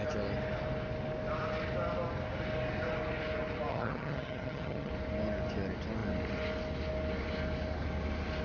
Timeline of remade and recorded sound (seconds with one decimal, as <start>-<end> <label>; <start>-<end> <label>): 0.0-3.7 recorded; 3.7-4.9 remade; 4.9-8.4 recorded